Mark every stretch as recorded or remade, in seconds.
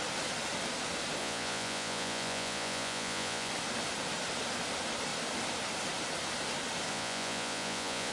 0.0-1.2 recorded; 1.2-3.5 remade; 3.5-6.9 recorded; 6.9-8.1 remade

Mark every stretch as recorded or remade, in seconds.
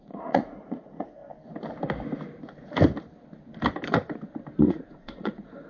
0.0-1.2 remade; 1.2-4.6 recorded; 4.6-5.7 remade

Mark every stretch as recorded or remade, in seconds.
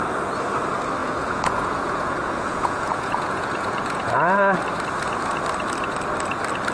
0.0-1.0 recorded; 1.0-4.1 remade; 4.1-6.7 recorded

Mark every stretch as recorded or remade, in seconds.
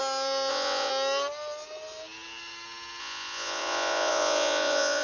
0.0-0.5 recorded; 0.5-0.9 remade; 0.9-3.0 recorded; 3.0-5.0 remade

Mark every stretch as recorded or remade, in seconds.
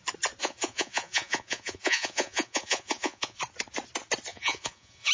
0.0-0.4 recorded; 0.4-3.4 remade; 3.4-4.3 recorded; 4.3-5.1 remade